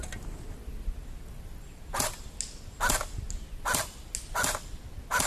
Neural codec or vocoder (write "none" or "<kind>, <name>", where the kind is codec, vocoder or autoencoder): none